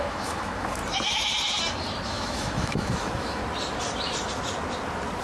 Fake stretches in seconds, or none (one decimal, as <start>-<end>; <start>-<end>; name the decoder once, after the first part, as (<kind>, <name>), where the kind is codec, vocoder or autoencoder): 0.0-0.8 (autoencoder, DAC-VAE); 2.1-3.4